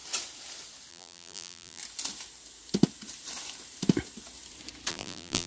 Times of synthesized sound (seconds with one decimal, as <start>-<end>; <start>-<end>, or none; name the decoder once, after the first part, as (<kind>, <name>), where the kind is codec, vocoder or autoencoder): 0.9-1.8 (vocoder, BigVGAN v2); 4.9-5.5